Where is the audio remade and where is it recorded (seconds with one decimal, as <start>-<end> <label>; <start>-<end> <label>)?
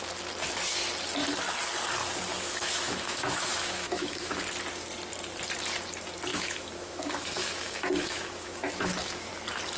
0.0-2.3 recorded; 2.3-4.4 remade; 4.4-6.3 recorded; 6.3-9.3 remade; 9.3-9.8 recorded